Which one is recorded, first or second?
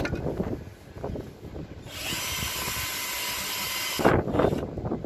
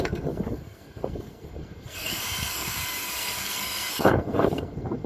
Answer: first